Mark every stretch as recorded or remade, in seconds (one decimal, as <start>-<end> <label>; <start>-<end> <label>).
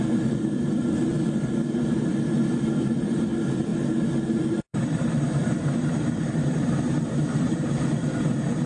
0.0-3.7 recorded; 3.7-7.8 remade; 7.8-8.7 recorded